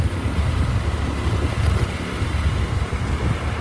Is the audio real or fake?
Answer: real